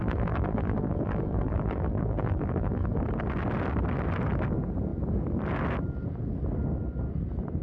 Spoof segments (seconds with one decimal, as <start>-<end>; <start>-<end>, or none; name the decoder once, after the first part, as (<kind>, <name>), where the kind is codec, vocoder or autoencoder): 0.0-2.9 (vocoder, BigVGAN v2)